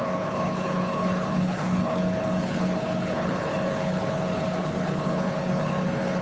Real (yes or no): no